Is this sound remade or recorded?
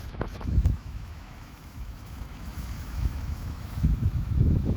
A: remade